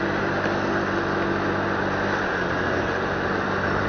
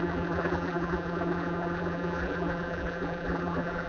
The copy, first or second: second